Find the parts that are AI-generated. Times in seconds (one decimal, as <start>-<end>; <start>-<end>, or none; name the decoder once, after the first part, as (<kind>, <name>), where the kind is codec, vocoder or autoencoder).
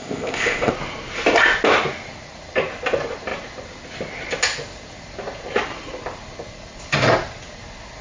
0.0-0.7 (codec, ZipCodec)